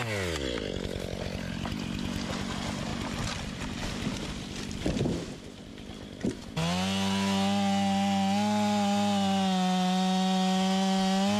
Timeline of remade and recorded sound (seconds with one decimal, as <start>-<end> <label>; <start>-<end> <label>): 0.0-2.9 recorded; 2.9-3.6 remade; 3.6-5.7 recorded; 5.7-6.4 remade; 6.4-11.4 recorded